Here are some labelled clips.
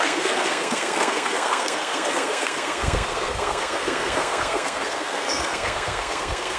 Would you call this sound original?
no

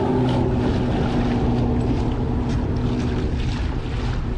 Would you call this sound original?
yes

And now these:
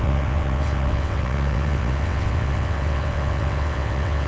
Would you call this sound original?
no